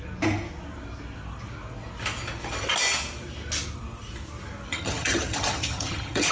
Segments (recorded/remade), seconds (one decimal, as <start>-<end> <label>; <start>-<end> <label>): 0.0-4.7 recorded; 4.7-6.3 remade